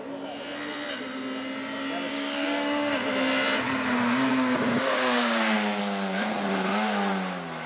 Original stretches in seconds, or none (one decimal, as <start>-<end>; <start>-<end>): 0.0-2.1; 2.9-4.3; 5.8-7.7